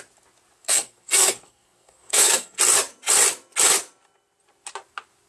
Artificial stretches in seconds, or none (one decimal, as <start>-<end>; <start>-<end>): 0.6-2.6